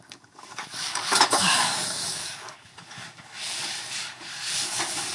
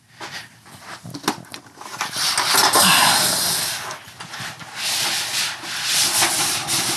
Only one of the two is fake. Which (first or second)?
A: first